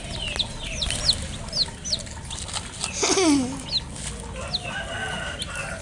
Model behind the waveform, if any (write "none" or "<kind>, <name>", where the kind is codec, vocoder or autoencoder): none